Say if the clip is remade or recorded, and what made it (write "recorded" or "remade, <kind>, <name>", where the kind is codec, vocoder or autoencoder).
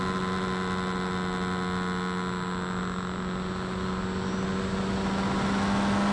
recorded